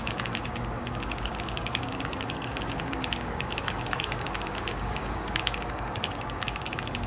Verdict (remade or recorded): remade